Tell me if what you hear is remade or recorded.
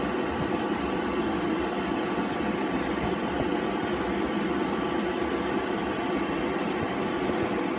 recorded